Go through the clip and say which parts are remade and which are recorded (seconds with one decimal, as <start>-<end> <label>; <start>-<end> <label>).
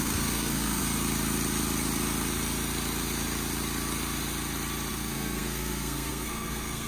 0.0-0.8 remade; 0.8-4.9 recorded; 4.9-6.9 remade